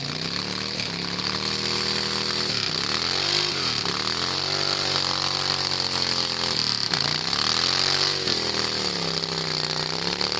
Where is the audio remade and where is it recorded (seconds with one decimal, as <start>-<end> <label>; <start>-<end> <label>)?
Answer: 0.0-10.4 recorded